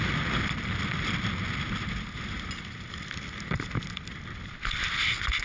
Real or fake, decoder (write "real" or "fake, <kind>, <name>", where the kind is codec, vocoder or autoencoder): real